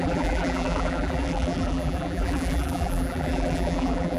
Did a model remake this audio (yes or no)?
yes